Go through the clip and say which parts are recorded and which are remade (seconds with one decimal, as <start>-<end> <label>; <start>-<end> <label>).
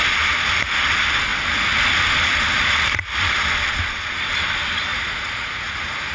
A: 0.0-4.9 recorded; 4.9-6.1 remade